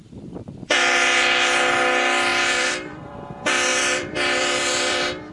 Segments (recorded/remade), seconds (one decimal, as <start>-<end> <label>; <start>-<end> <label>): 0.0-2.3 recorded; 2.3-3.1 remade; 3.1-3.7 recorded; 3.7-5.3 remade